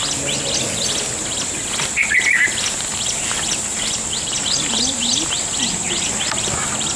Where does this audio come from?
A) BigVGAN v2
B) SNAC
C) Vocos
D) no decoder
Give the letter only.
D